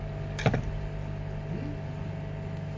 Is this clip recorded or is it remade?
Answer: recorded